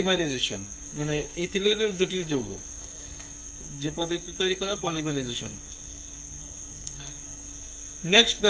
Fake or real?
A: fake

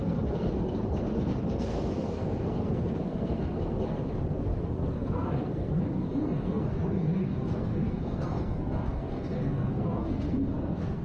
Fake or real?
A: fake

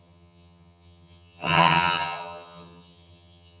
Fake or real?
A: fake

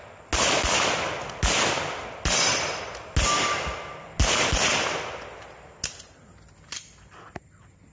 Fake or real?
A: real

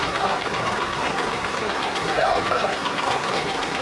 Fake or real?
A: fake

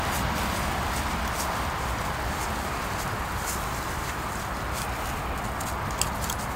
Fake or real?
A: real